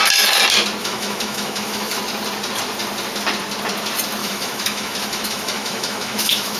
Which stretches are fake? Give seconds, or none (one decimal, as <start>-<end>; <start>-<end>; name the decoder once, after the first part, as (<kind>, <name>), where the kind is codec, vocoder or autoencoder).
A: 0.8-2.0 (autoencoder, DAC-VAE); 4.2-6.6